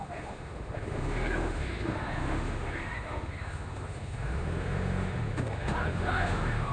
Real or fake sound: fake